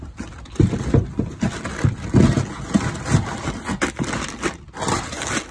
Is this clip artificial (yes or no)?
no